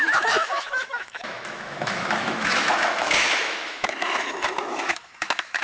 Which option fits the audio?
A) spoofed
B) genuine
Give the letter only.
A